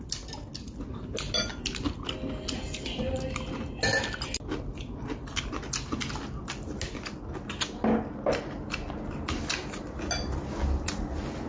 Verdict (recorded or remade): recorded